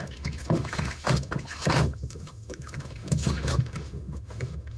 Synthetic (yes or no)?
yes